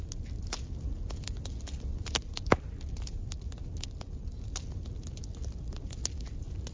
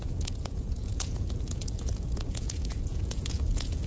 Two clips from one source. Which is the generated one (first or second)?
second